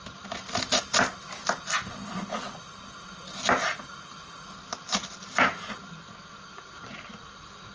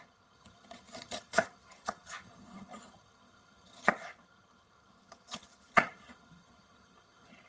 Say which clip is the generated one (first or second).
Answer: second